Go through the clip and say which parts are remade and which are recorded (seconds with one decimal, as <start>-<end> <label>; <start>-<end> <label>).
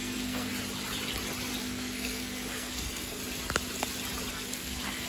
0.0-0.5 remade; 0.5-1.6 recorded; 1.6-3.2 remade; 3.2-4.3 recorded; 4.3-5.1 remade